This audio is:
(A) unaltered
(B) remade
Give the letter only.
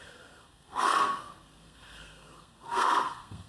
B